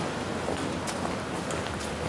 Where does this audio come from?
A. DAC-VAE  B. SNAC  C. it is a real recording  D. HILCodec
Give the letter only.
C